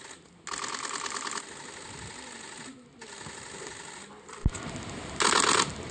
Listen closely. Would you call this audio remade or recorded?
recorded